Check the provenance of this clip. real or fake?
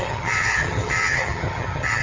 fake